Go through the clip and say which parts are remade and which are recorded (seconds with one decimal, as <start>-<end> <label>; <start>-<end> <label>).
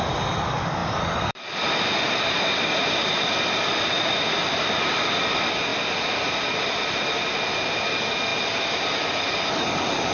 0.0-0.8 recorded; 0.8-5.1 remade; 5.1-10.1 recorded